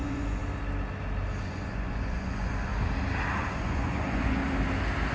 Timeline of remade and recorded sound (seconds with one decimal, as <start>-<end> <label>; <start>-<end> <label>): 0.0-0.4 remade; 0.4-1.4 recorded; 1.4-2.7 remade; 2.7-3.4 recorded; 3.4-4.4 remade; 4.4-5.1 recorded